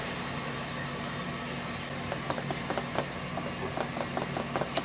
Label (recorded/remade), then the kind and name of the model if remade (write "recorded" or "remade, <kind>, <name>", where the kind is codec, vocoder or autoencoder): recorded